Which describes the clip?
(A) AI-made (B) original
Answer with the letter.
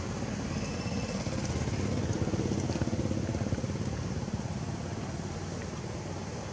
B